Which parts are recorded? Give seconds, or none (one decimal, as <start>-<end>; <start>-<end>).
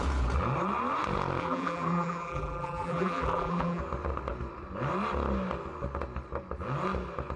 0.0-1.4; 3.8-7.4